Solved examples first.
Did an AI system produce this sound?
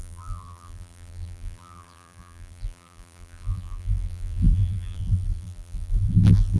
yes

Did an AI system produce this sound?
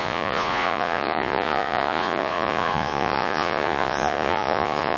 yes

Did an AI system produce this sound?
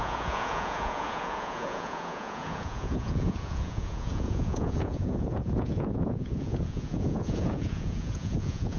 yes